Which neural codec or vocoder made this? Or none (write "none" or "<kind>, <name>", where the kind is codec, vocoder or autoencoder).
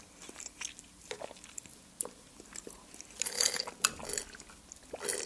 none